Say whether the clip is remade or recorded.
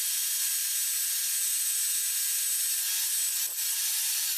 recorded